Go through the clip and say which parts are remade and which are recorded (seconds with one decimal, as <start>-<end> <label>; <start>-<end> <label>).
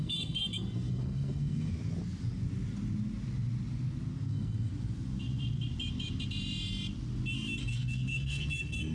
0.0-1.7 remade; 1.7-4.3 recorded; 4.3-4.7 remade; 4.7-7.6 recorded; 7.6-8.9 remade